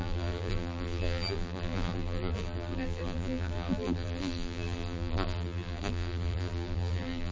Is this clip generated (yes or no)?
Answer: yes